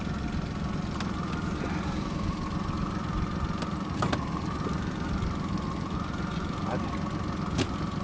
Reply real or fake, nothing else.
real